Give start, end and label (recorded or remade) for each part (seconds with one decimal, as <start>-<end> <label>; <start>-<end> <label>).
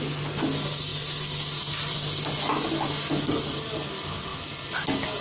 0.0-5.2 recorded